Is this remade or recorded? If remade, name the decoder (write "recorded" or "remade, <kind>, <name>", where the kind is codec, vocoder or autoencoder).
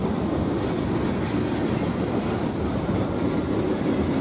recorded